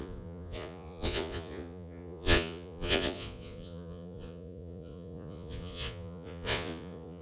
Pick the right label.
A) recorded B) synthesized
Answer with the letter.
B